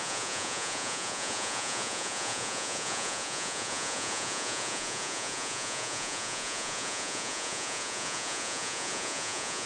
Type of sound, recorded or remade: remade